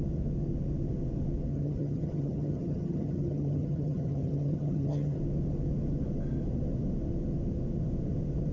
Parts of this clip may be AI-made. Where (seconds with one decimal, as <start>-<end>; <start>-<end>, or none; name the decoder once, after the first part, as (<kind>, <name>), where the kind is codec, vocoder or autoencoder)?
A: 1.5-5.2 (vocoder, HiFi-GAN)